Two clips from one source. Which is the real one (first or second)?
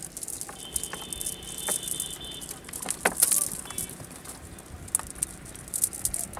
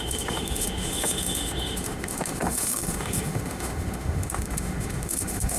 first